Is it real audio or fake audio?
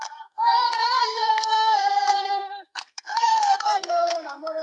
fake